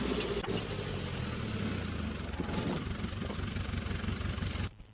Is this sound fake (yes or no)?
no